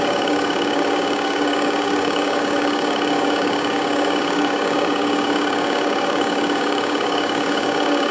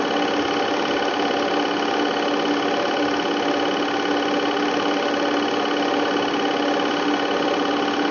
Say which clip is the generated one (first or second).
first